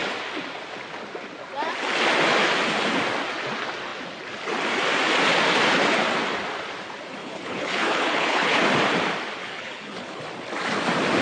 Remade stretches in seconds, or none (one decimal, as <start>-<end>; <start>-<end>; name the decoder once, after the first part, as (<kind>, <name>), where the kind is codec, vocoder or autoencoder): 7.2-8.6 (codec, HILCodec); 9.4-10.2